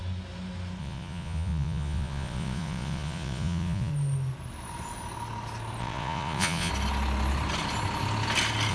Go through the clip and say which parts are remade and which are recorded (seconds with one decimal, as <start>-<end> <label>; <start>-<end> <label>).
0.0-0.8 recorded; 0.8-3.9 remade; 3.9-5.8 recorded; 5.8-6.7 remade; 6.7-8.7 recorded